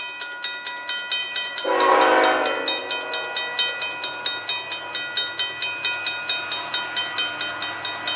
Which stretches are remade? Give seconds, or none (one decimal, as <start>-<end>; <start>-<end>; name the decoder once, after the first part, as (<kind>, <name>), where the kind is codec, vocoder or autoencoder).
1.2-2.0 (vocoder, BigVGAN v2)